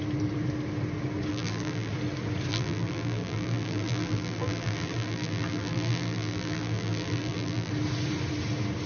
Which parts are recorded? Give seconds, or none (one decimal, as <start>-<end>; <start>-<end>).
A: 0.0-1.3; 1.9-2.5; 7.7-8.9